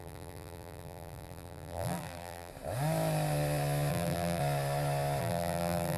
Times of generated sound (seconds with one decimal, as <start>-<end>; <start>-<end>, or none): 0.0-2.5; 3.9-4.4; 5.2-6.0